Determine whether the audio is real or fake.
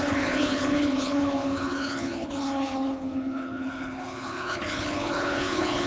fake